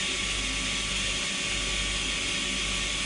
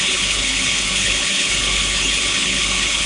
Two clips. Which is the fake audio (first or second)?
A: second